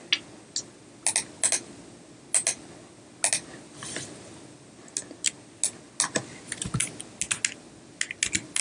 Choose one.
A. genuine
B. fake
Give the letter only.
A